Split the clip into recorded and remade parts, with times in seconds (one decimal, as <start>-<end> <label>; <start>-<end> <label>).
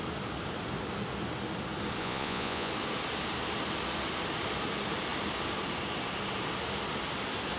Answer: 0.0-2.0 recorded; 2.0-2.7 remade; 2.7-7.6 recorded